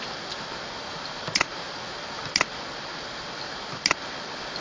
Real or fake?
real